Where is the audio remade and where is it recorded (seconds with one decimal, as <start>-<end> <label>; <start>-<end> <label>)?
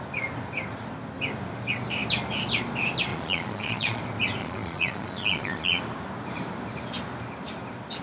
0.0-3.1 recorded; 3.1-4.0 remade; 4.0-4.4 recorded; 4.4-5.8 remade; 5.8-8.0 recorded